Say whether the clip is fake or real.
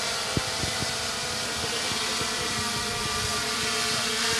real